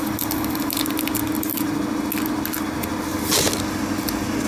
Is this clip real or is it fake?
real